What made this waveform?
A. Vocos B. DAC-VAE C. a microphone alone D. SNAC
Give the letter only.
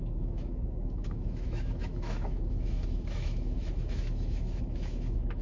B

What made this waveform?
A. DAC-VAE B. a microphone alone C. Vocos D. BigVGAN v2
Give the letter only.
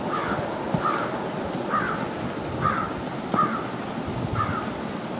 B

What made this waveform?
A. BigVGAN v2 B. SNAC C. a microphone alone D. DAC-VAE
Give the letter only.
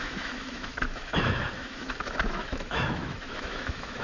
D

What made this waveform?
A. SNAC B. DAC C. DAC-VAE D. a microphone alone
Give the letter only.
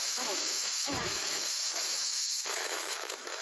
C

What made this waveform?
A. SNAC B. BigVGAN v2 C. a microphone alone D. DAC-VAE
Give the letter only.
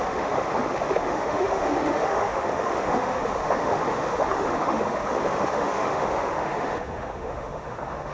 D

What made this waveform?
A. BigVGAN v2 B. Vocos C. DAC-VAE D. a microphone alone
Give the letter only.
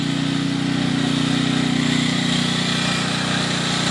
D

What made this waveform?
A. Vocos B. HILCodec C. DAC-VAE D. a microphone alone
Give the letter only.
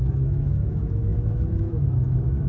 C